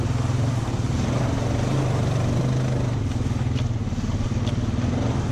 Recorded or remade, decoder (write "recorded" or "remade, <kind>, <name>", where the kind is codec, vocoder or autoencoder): recorded